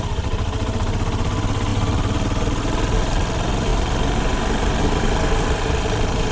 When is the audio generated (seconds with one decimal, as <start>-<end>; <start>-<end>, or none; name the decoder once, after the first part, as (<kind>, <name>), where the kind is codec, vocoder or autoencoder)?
none